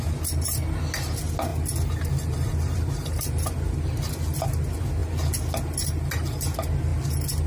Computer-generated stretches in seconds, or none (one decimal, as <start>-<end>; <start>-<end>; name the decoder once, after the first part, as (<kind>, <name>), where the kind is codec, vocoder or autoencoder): 1.5-4.1 (vocoder, BigVGAN v2)